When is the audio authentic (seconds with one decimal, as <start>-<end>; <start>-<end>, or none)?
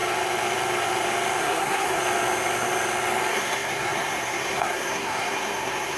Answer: 0.0-1.4; 2.0-3.3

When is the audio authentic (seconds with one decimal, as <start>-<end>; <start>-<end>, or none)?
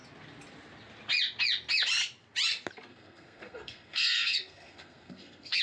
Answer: 0.0-2.9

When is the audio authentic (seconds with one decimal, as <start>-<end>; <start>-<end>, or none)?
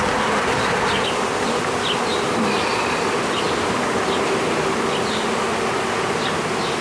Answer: 0.0-6.8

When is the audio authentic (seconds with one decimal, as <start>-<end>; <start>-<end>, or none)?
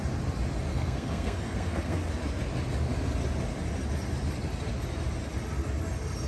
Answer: 0.0-0.7; 2.1-6.3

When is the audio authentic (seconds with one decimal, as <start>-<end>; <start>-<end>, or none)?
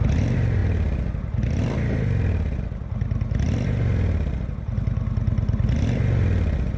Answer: 0.0-6.8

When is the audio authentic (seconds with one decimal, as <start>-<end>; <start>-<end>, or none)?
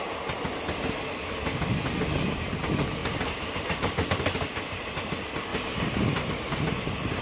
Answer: 0.0-7.2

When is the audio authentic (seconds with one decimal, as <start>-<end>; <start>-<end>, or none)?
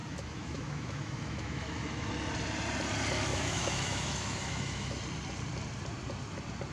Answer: 2.1-3.3; 5.0-6.7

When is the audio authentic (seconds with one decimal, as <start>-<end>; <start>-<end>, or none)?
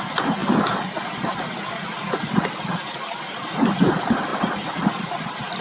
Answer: 0.0-4.3; 5.1-5.6